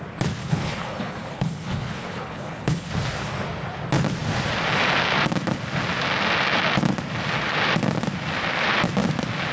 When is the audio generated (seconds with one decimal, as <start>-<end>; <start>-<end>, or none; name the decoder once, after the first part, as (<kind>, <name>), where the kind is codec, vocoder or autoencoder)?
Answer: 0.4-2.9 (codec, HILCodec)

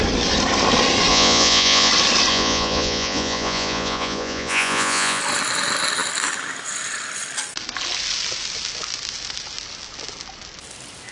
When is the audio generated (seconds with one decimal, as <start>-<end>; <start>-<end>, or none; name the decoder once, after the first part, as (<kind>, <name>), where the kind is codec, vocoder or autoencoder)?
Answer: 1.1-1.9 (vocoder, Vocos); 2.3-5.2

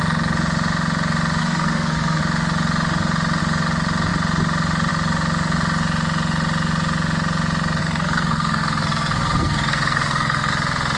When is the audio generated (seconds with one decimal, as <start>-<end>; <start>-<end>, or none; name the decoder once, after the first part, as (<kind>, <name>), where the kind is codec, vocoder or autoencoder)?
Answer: 1.4-2.2 (codec, SNAC); 7.8-10.5

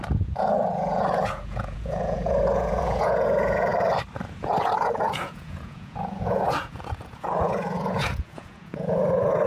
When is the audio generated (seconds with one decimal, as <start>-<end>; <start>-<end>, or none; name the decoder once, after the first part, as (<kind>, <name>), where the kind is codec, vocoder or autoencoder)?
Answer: 0.0-3.7 (vocoder, Vocos); 4.4-9.5

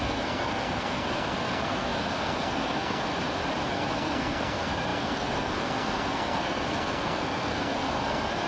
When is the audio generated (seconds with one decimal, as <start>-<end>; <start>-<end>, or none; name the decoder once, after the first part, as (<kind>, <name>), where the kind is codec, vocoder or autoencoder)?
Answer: 0.0-3.1 (codec, SNAC); 3.7-8.5

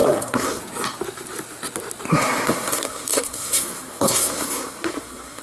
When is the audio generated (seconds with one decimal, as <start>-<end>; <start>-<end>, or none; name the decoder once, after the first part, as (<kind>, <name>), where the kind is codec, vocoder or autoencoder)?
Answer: 0.0-0.6 (codec, SNAC); 2.1-5.4

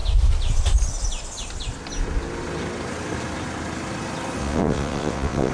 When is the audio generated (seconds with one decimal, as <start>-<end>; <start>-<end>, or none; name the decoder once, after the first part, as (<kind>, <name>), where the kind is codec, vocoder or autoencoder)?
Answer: 4.4-5.5 (vocoder, WaveNeXt)

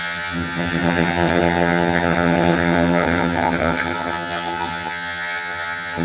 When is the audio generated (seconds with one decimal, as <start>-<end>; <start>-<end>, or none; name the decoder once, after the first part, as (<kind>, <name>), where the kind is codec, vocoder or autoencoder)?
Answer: 0.0-6.0 (vocoder, HiFi-GAN)